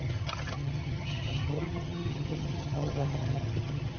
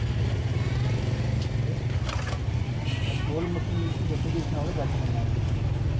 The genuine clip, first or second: second